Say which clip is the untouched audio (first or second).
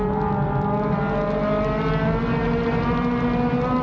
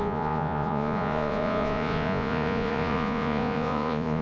first